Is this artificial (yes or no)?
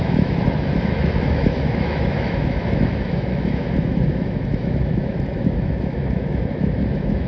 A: yes